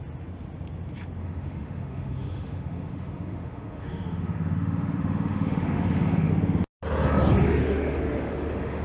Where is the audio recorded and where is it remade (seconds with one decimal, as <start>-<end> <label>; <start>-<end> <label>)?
0.0-1.2 recorded; 1.2-6.3 remade; 6.3-7.6 recorded; 7.6-8.8 remade